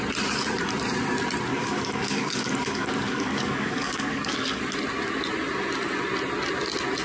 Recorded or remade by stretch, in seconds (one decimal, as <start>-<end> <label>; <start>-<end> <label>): 0.0-1.5 recorded; 1.5-4.6 remade; 4.6-7.0 recorded